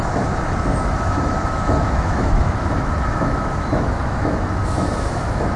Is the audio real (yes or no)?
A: no